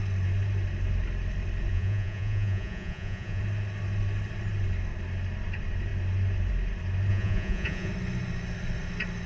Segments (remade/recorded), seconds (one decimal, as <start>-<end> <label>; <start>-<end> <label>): 0.0-1.7 recorded; 1.7-3.4 remade; 3.4-7.1 recorded; 7.1-7.9 remade; 7.9-9.3 recorded